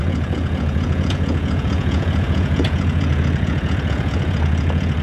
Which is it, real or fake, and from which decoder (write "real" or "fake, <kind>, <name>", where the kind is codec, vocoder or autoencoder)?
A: fake, vocoder, Vocos